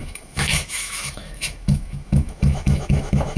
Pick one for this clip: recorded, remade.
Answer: remade